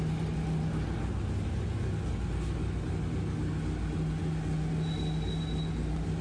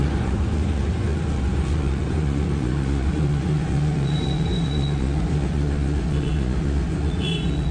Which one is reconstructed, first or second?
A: second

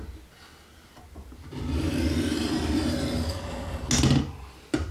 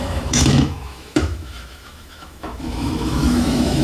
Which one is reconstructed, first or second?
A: second